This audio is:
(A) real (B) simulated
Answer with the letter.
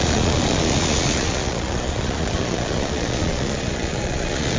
B